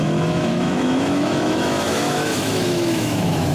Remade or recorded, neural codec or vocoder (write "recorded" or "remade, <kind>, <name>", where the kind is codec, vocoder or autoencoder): remade, autoencoder, DAC-VAE